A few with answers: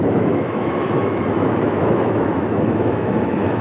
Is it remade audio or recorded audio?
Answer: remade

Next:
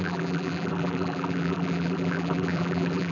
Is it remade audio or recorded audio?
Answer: remade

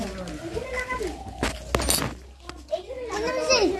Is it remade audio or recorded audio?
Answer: recorded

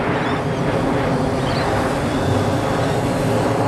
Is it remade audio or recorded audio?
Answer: recorded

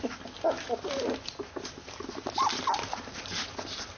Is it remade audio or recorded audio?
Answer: recorded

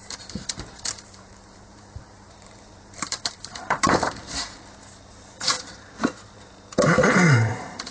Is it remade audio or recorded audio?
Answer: remade